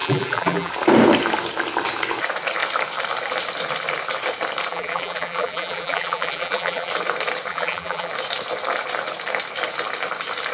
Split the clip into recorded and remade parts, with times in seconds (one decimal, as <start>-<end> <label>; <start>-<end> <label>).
0.0-0.7 remade; 0.7-4.7 recorded; 4.7-6.9 remade; 6.9-7.5 recorded; 7.5-8.1 remade; 8.1-10.5 recorded